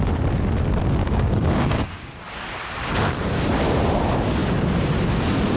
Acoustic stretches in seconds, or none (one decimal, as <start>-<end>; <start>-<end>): 0.0-1.0; 2.1-5.6